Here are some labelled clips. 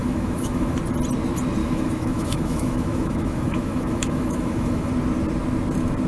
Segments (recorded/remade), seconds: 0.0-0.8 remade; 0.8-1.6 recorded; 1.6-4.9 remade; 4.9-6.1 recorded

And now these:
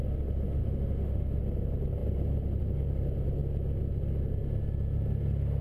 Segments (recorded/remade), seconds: 0.0-0.6 recorded; 0.6-1.4 remade; 1.4-5.6 recorded

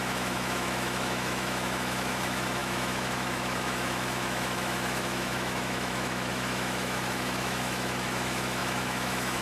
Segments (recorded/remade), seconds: 0.0-9.4 remade

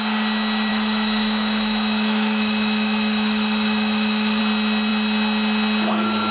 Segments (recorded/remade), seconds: 0.0-0.7 recorded; 0.7-4.4 remade; 4.4-6.3 recorded

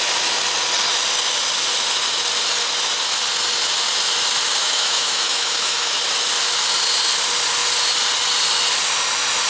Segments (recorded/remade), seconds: 0.0-4.6 recorded; 4.6-6.0 remade; 6.0-9.5 recorded

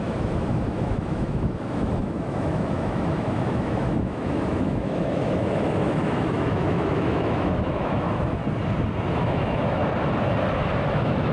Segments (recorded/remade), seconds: 0.0-8.4 remade; 8.4-9.1 recorded; 9.1-9.8 remade; 9.8-10.9 recorded; 10.9-11.3 remade

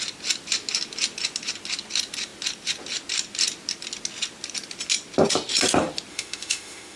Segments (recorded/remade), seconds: 0.0-6.1 recorded; 6.1-7.0 remade

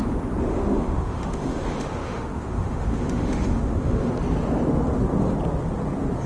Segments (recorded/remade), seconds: 0.0-0.5 recorded; 0.5-4.1 remade; 4.1-6.3 recorded